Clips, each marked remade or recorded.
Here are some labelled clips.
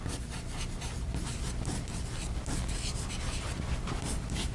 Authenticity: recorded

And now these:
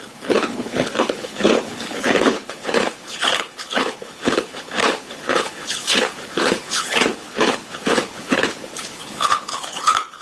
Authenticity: remade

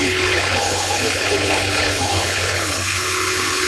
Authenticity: remade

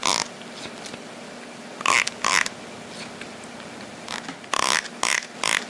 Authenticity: recorded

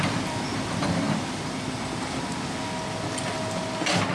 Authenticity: recorded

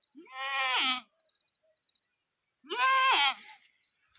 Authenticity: recorded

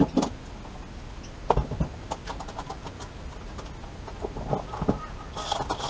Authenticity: recorded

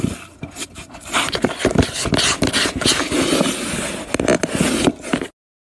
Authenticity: recorded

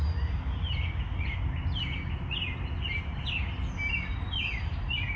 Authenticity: recorded